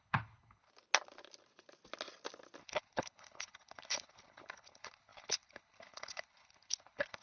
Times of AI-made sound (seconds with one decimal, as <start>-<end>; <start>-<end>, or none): 0.0-0.7; 2.6-7.2

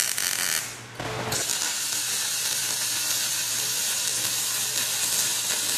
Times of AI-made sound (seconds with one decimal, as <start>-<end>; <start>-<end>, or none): 1.5-3.6

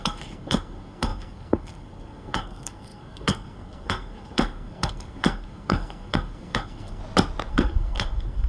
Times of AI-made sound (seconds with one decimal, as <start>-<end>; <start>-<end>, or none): 0.0-7.0; 7.5-8.5